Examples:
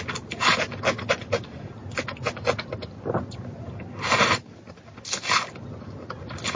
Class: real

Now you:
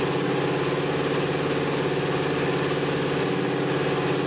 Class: real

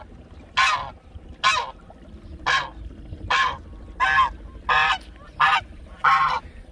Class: real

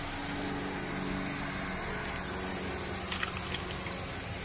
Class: real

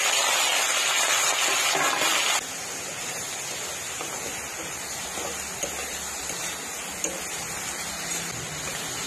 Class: real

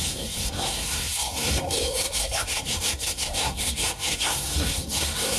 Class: fake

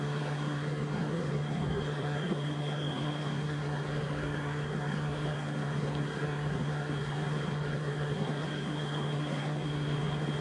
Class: fake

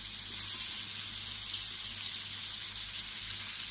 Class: real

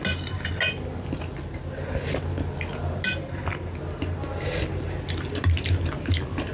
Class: real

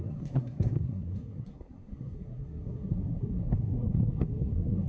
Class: fake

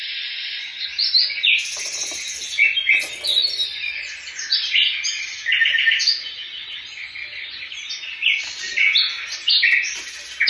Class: real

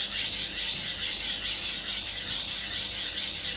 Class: real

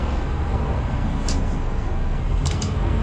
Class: fake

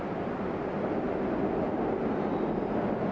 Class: real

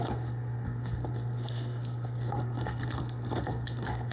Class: fake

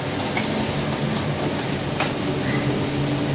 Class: real